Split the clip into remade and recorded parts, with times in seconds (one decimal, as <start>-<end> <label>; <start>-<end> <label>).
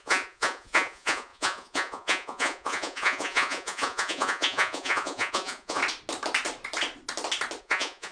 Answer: 0.0-5.8 remade; 5.8-7.6 recorded; 7.6-8.1 remade